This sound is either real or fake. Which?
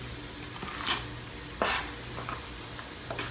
real